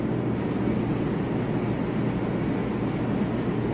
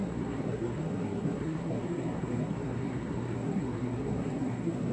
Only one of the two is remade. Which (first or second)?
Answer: second